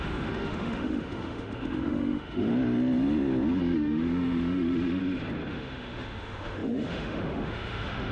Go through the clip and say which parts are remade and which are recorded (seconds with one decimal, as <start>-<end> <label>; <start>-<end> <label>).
0.0-2.5 remade; 2.5-3.6 recorded; 3.6-5.0 remade; 5.0-5.5 recorded; 5.5-8.1 remade